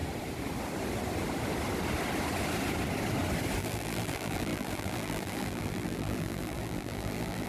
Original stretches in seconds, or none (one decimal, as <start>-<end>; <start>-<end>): 0.0-3.6